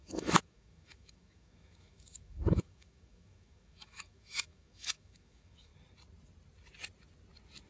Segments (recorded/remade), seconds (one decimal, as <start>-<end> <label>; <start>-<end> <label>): 0.0-5.7 remade; 5.7-7.7 recorded